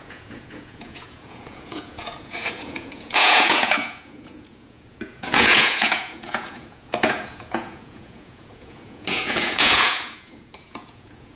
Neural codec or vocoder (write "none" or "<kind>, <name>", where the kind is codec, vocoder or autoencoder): vocoder, Vocos